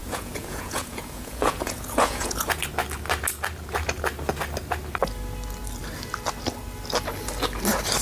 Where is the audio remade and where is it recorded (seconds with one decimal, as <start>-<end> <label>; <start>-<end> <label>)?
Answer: 0.0-2.6 remade; 2.6-8.0 recorded